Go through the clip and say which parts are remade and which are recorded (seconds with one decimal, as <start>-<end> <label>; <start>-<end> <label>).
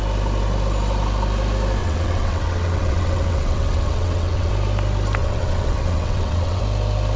0.0-1.8 recorded; 1.8-4.5 remade; 4.5-5.2 recorded; 5.2-6.6 remade; 6.6-7.2 recorded